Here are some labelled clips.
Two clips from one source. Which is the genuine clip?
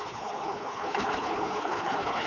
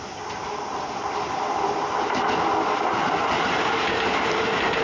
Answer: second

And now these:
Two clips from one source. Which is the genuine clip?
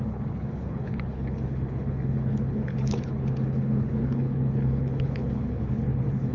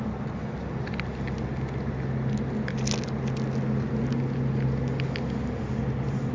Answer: second